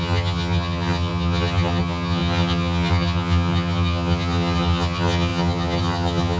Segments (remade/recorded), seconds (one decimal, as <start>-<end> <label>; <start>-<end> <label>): 0.0-6.4 remade